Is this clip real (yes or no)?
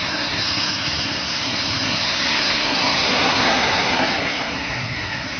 no